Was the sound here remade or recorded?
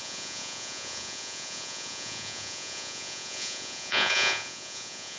remade